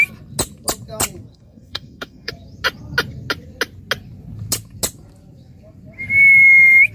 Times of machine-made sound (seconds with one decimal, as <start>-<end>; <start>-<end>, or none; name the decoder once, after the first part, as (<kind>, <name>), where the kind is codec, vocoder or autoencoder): 1.3-2.3 (codec, SNAC)